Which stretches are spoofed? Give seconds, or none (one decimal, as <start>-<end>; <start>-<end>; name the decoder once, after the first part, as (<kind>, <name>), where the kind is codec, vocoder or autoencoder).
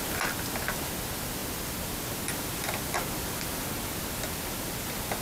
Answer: none